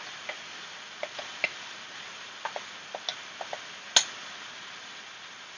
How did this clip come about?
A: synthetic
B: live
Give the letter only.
B